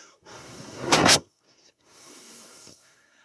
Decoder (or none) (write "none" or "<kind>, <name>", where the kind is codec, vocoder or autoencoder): codec, SNAC